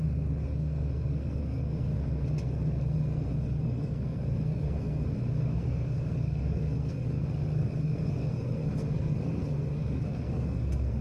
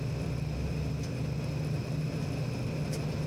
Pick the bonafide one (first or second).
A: second